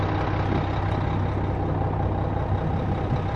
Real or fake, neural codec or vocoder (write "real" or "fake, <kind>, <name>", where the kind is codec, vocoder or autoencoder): real